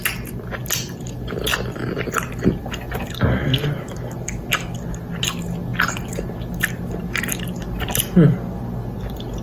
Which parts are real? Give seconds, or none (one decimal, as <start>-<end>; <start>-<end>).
0.0-9.4